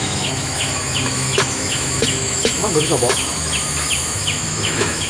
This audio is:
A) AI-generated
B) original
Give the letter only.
A